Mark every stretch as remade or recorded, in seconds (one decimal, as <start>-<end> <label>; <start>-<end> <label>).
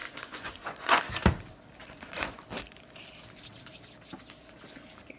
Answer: 0.0-1.0 remade; 1.0-1.8 recorded; 1.8-2.4 remade; 2.4-5.2 recorded